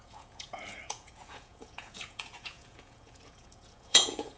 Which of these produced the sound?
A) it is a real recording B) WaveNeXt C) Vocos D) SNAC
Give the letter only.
C